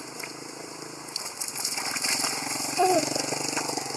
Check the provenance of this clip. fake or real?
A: real